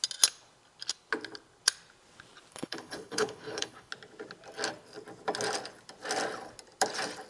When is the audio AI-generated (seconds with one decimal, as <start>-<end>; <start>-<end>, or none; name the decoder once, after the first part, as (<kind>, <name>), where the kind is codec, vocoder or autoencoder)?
2.5-3.9 (codec, HILCodec)